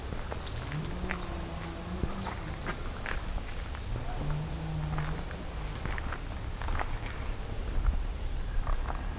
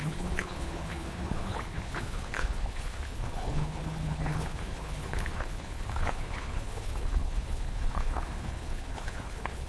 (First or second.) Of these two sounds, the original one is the first